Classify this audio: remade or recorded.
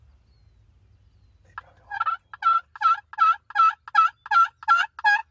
recorded